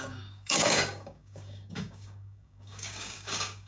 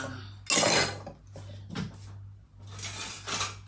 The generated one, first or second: first